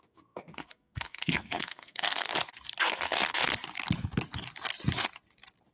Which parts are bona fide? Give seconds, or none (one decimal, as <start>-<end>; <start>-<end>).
2.3-2.8; 3.5-5.7